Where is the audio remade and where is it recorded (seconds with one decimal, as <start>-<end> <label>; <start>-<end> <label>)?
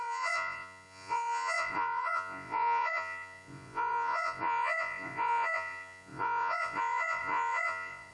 0.0-8.1 remade